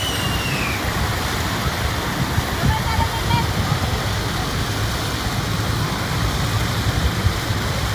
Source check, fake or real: real